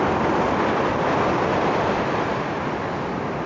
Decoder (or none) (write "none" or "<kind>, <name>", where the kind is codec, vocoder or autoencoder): none